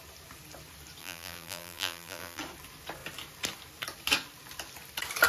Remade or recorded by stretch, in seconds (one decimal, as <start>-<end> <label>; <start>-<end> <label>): 0.0-1.0 recorded; 1.0-2.4 remade; 2.4-5.3 recorded